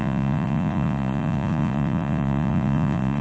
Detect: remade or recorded remade